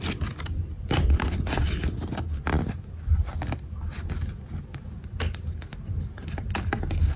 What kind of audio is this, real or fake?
real